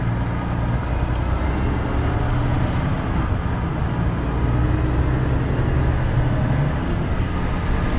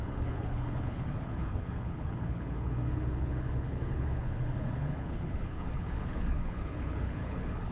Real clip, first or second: first